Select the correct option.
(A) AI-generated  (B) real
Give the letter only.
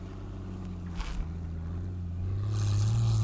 B